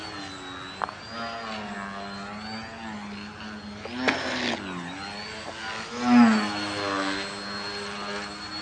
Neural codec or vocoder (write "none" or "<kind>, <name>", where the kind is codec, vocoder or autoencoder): none